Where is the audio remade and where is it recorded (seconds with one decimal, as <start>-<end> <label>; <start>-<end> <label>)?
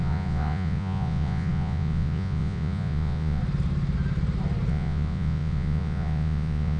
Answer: 0.0-3.4 remade; 3.4-4.7 recorded; 4.7-6.8 remade